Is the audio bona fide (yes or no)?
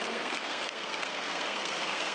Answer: no